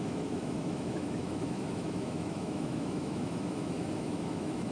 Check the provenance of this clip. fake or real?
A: fake